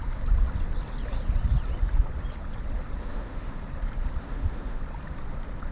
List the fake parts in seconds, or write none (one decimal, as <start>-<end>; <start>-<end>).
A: 3.0-3.6; 4.2-4.8

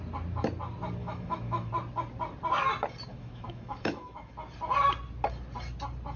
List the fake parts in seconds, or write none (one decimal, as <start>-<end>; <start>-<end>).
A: 1.0-1.7; 3.1-4.3

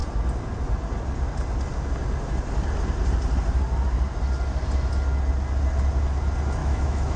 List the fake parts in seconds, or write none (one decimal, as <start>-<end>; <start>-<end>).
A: 6.6-7.2